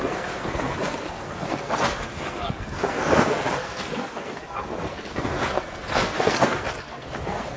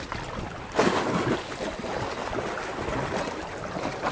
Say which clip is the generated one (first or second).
first